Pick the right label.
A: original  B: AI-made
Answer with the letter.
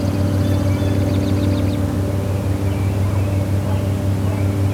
A